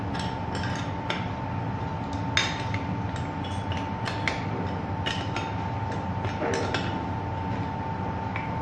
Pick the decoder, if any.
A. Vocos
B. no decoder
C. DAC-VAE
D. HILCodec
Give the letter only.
B